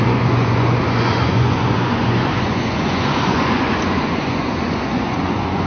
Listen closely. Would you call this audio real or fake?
fake